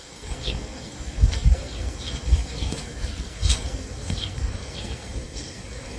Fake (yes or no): yes